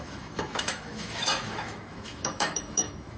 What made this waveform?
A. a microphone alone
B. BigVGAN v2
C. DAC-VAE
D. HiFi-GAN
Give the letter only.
C